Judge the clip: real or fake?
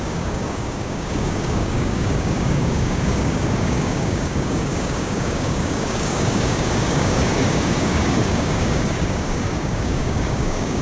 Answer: fake